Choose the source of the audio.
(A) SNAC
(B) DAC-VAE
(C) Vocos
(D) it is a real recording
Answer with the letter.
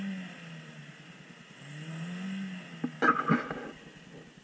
D